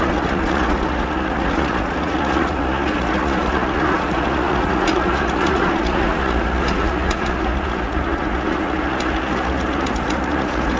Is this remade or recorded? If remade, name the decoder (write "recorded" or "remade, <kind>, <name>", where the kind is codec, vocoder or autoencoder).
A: remade, vocoder, Vocos